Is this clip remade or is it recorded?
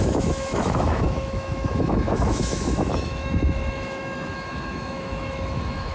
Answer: remade